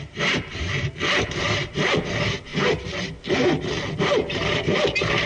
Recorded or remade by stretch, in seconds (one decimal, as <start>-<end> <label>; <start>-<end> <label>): 0.0-2.5 remade; 2.5-4.0 recorded; 4.0-5.3 remade